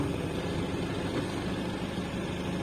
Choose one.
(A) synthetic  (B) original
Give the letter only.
B